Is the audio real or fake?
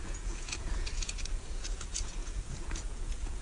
fake